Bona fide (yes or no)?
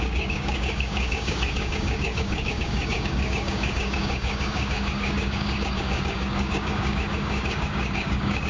no